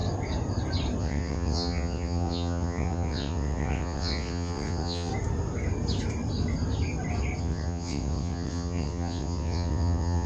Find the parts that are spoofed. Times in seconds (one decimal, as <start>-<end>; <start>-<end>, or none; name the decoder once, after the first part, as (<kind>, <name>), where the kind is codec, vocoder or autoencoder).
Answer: 1.0-5.1 (vocoder, WaveNeXt); 7.4-10.3